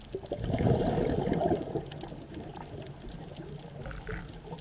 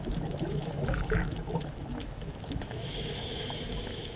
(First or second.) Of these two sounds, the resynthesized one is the second